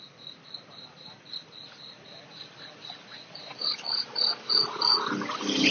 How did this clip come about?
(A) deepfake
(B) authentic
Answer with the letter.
B